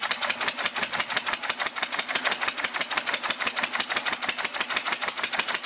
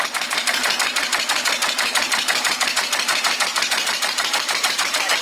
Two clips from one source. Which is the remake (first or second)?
second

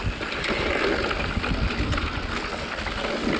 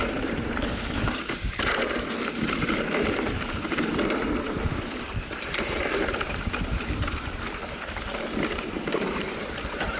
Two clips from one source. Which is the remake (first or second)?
second